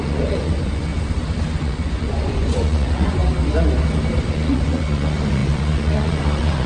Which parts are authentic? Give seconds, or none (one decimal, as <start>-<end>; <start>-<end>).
0.9-1.6; 3.2-4.3